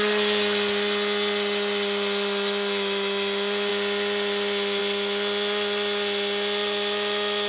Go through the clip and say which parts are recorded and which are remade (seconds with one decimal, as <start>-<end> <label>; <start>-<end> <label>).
0.0-7.5 recorded